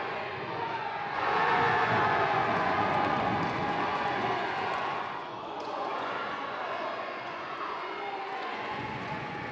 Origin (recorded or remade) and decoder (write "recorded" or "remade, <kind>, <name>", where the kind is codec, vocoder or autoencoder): remade, vocoder, Vocos